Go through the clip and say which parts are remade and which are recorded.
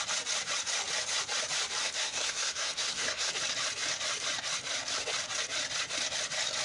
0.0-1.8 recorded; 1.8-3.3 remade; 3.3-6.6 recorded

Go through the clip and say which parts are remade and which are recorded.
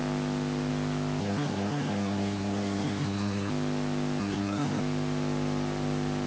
0.0-1.2 recorded; 1.2-3.5 remade; 3.5-4.2 recorded; 4.2-4.8 remade; 4.8-6.3 recorded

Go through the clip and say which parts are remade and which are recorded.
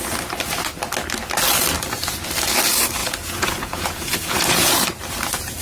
0.0-3.0 recorded; 3.0-4.7 remade; 4.7-5.6 recorded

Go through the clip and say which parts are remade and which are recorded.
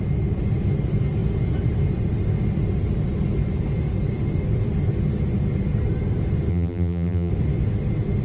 0.0-6.5 recorded; 6.5-7.3 remade; 7.3-8.2 recorded